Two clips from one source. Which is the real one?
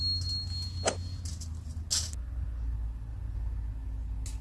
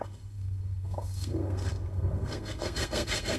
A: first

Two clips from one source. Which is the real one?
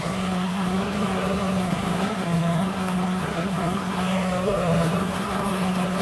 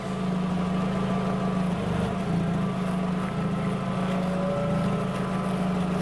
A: second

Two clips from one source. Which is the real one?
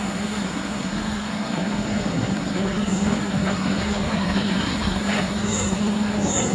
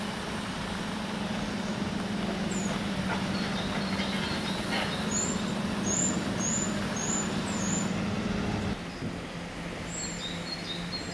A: second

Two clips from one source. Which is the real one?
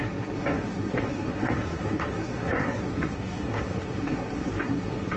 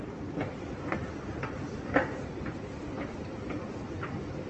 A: second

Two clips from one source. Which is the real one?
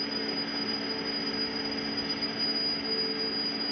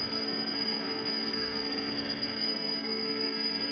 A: first